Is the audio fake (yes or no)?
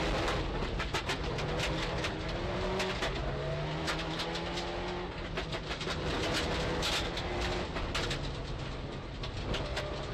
no